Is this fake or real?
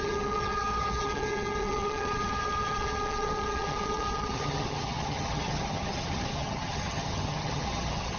fake